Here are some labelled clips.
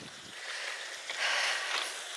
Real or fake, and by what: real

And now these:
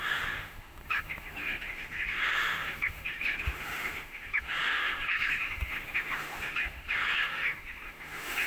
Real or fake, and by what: fake, autoencoder, DAC-VAE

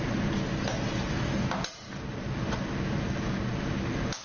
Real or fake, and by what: real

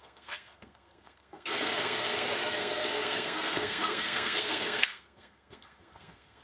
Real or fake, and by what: fake, codec, SNAC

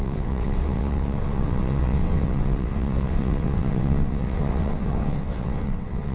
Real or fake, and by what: fake, vocoder, WaveNeXt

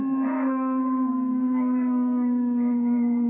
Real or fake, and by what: fake, codec, SNAC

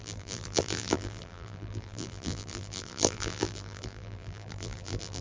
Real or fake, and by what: fake, vocoder, BigVGAN v2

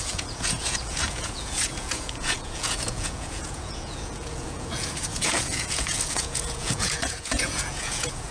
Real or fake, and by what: fake, vocoder, Vocos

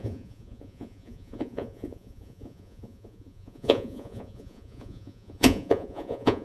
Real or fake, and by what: fake, vocoder, Vocos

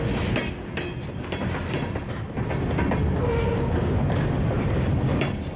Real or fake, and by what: real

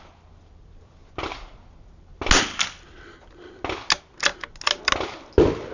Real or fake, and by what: real